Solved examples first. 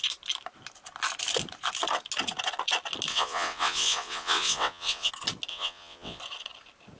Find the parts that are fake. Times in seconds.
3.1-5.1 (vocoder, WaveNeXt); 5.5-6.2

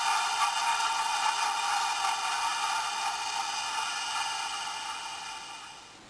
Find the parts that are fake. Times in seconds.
0.7-1.3 (vocoder, WaveNeXt)

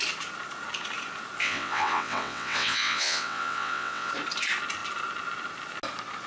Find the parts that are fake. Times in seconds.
1.4-4.1 (vocoder, WaveNeXt)